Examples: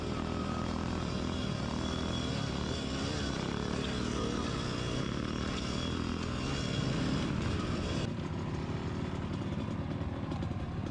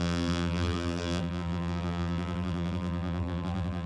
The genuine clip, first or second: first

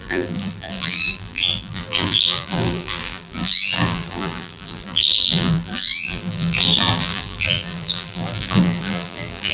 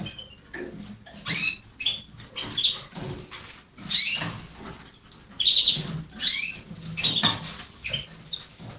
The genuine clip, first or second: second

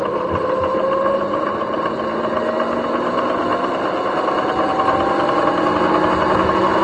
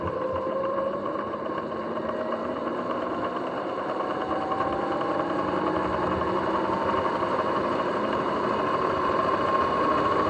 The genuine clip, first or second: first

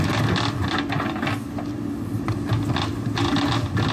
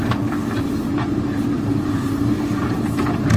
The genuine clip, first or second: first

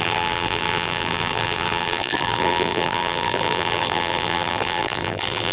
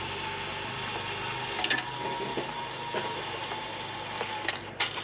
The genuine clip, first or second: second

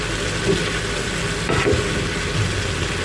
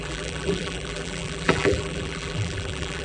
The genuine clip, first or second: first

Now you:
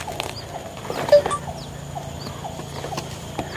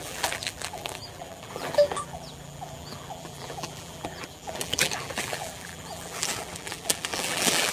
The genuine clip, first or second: first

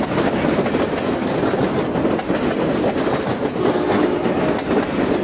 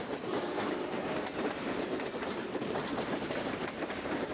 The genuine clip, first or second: first